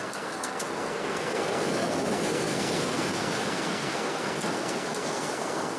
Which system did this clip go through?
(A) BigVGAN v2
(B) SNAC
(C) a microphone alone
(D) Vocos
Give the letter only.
B